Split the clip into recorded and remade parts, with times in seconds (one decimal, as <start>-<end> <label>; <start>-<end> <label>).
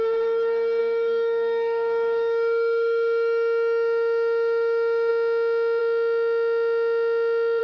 0.0-0.8 recorded; 0.8-5.1 remade; 5.1-7.6 recorded